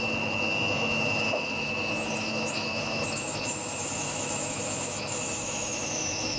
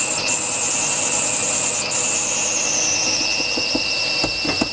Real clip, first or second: second